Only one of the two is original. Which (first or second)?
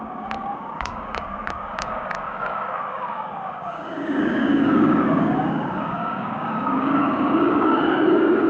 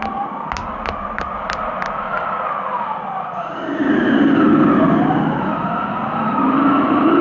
second